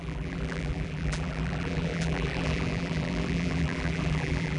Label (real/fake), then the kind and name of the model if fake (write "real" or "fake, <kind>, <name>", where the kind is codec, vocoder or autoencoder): fake, vocoder, BigVGAN v2